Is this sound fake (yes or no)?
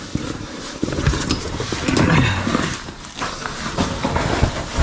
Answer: no